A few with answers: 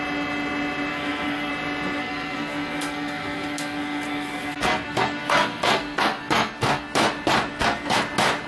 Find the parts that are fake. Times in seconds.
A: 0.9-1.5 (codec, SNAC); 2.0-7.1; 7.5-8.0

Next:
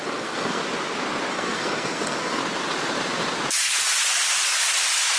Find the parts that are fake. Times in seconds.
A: 0.0-0.6 (codec, SNAC); 1.3-2.4

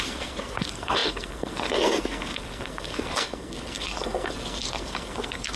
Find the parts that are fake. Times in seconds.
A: 0.0-5.6 (codec, SNAC)